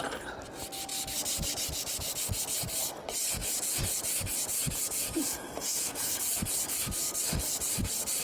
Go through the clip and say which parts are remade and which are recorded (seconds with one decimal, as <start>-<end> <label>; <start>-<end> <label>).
0.0-3.4 recorded; 3.4-6.2 remade; 6.2-8.2 recorded